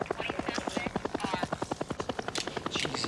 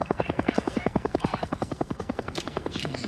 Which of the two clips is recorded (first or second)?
first